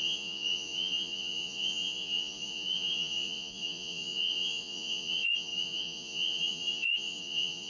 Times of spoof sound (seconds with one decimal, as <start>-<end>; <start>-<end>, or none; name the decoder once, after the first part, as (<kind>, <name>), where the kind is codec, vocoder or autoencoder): 0.0-7.7 (vocoder, Vocos)